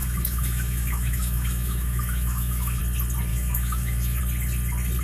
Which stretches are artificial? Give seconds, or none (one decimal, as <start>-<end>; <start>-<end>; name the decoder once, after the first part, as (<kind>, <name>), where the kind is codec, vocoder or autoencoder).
0.0-2.8 (autoencoder, DAC-VAE); 3.3-4.2